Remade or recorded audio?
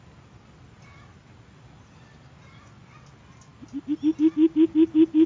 recorded